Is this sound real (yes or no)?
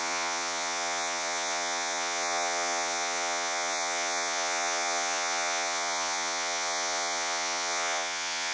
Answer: no